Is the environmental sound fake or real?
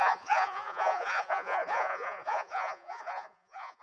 fake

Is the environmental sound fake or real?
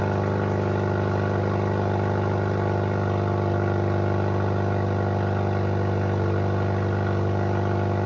real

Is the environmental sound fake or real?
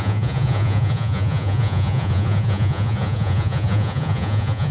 fake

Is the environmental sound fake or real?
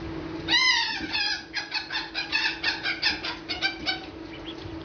real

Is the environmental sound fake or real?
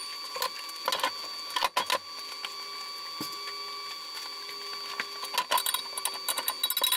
real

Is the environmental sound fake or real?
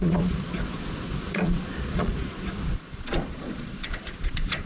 fake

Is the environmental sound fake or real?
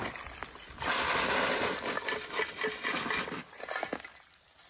real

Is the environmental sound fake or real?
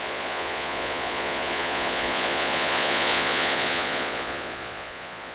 fake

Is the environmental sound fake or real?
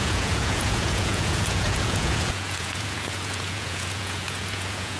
fake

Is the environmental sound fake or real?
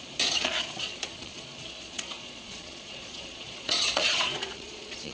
fake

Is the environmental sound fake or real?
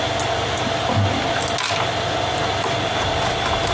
real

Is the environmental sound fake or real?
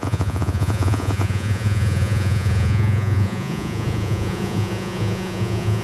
fake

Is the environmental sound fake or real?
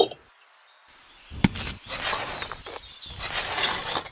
real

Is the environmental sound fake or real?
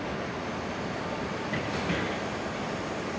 real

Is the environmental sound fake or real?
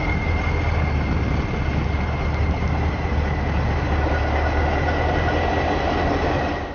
real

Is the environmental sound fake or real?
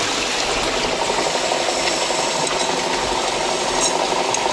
real